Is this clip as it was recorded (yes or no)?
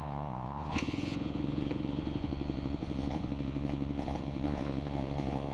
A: no